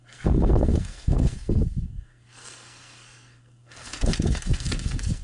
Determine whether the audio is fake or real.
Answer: fake